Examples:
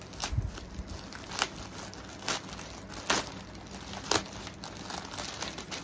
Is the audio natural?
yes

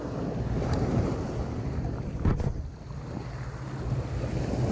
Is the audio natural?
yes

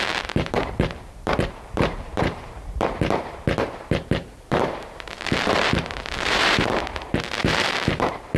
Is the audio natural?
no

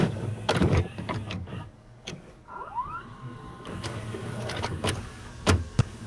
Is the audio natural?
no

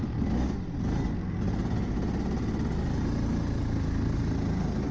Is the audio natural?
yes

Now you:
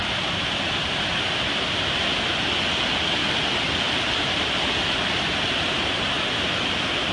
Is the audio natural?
yes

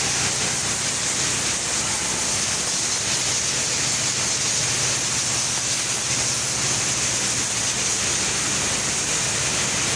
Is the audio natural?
yes